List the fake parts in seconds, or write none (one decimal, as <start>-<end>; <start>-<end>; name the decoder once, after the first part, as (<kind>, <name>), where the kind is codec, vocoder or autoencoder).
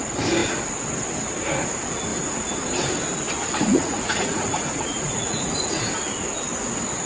3.7-5.8 (vocoder, Vocos)